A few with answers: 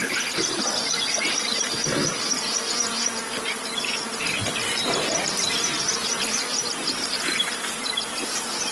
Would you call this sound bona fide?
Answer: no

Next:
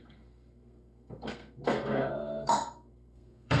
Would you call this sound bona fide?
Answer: no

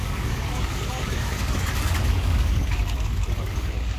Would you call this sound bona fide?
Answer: no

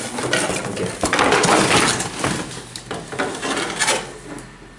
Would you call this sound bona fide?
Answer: yes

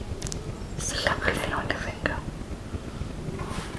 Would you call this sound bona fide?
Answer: yes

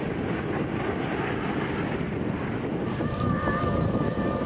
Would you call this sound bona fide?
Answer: yes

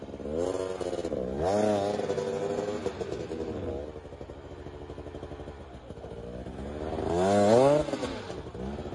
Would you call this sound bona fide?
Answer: yes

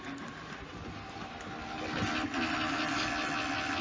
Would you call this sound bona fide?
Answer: yes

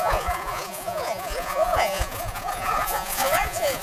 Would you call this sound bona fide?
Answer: no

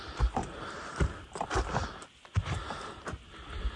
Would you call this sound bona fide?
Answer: yes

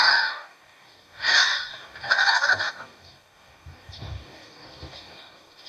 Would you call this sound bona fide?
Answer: no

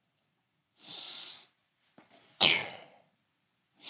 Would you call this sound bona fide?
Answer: no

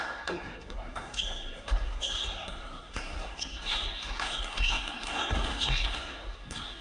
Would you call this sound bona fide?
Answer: no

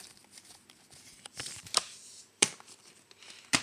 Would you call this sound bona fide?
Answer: no